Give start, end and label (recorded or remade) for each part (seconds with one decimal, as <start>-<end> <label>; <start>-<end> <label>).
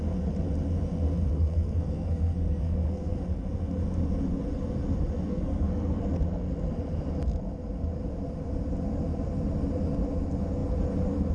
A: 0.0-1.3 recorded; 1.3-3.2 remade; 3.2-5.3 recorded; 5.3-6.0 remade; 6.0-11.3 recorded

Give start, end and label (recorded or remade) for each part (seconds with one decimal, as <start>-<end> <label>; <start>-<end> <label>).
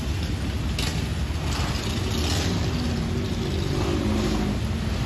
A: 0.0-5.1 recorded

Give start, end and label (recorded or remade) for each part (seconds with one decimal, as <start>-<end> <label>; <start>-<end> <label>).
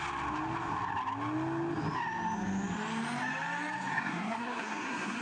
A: 0.0-3.9 recorded; 3.9-5.2 remade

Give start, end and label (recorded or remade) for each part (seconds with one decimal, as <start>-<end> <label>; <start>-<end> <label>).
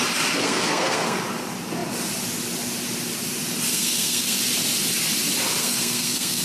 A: 0.0-0.4 recorded; 0.4-1.2 remade; 1.2-3.7 recorded; 3.7-4.4 remade; 4.4-5.6 recorded; 5.6-6.4 remade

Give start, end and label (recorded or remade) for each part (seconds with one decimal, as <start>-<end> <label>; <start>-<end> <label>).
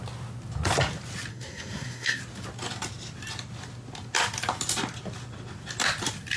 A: 0.0-1.3 recorded; 1.3-2.2 remade; 2.2-6.4 recorded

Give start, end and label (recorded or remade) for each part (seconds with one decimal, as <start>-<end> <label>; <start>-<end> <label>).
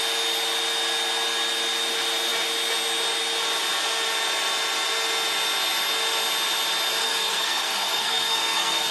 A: 0.0-7.0 recorded; 7.0-8.9 remade